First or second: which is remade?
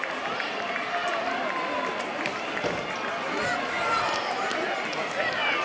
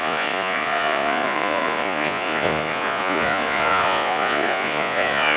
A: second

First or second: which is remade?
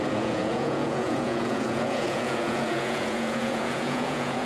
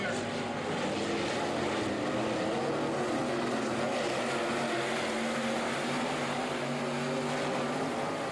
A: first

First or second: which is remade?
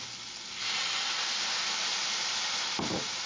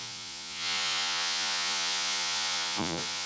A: second